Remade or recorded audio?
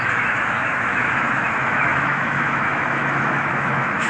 remade